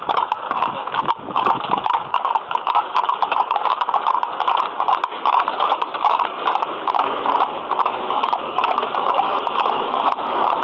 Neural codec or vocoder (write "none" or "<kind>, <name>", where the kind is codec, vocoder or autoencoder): codec, DAC